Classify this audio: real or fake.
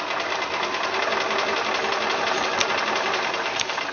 real